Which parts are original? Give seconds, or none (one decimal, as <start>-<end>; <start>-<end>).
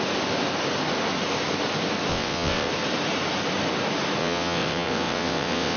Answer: 0.0-2.1; 2.7-4.2